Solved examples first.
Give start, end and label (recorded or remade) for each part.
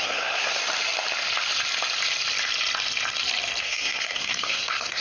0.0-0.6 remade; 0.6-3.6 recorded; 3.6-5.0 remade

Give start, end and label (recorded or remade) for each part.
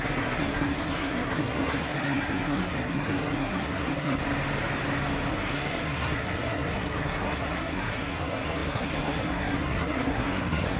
0.0-4.2 remade; 4.2-5.3 recorded; 5.3-10.8 remade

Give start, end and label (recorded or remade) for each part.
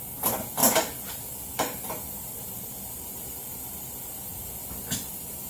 0.0-5.5 recorded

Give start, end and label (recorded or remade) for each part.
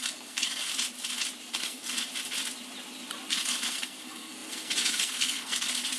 0.0-0.7 remade; 0.7-1.5 recorded; 1.5-2.1 remade; 2.1-3.3 recorded; 3.3-6.0 remade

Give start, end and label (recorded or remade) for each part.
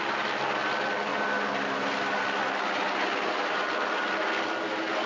0.0-5.1 recorded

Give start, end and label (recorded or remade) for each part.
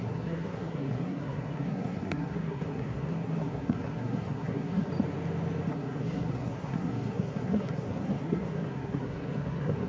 0.0-4.9 remade; 4.9-5.7 recorded; 5.7-9.9 remade